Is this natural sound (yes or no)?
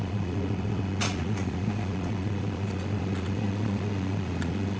no